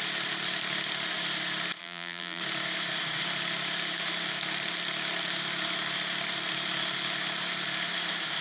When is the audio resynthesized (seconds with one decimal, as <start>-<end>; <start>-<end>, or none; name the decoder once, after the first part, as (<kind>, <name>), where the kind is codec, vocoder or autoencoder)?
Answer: 1.8-2.4 (vocoder, BigVGAN v2)